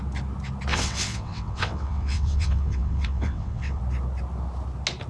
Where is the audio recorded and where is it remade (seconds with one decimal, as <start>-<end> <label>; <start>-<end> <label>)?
0.0-0.7 recorded; 0.7-3.8 remade; 3.8-5.1 recorded